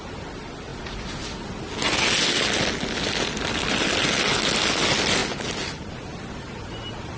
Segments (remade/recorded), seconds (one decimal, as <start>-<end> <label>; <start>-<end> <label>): 0.0-7.2 recorded